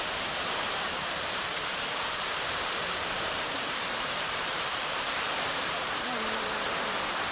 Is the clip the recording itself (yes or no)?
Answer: no